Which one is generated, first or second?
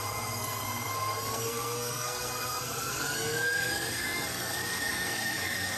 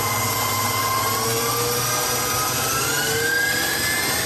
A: first